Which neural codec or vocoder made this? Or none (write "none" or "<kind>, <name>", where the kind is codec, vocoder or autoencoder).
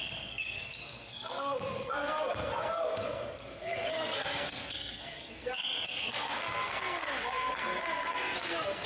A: codec, SNAC